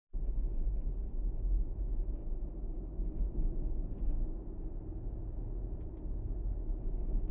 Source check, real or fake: real